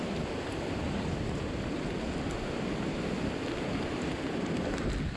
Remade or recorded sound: recorded